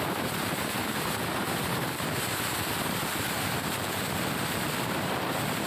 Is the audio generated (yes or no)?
yes